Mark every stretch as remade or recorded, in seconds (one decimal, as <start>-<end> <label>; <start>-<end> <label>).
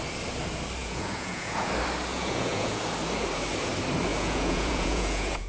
0.0-0.8 recorded; 0.8-1.7 remade; 1.7-2.1 recorded; 2.1-2.8 remade; 2.8-4.1 recorded; 4.1-5.5 remade